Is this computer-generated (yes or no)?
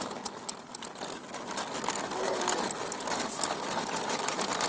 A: no